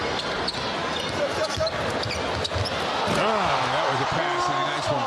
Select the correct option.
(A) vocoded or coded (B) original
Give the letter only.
B